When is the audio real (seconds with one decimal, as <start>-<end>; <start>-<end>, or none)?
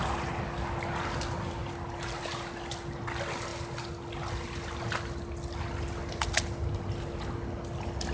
0.0-8.1